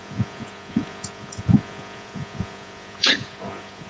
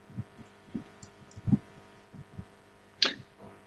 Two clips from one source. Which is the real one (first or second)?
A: second